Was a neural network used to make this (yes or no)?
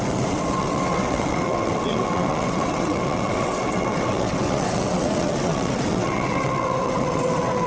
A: yes